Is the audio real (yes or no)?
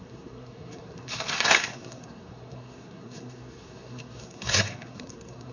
no